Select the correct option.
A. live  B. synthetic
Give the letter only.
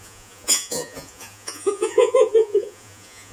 B